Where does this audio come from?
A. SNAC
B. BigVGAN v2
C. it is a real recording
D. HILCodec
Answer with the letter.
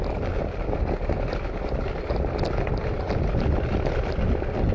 C